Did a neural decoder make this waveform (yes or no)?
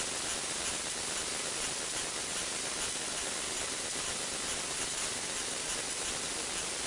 no